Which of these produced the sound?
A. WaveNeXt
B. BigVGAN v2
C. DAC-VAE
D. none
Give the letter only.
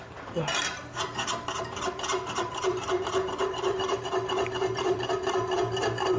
B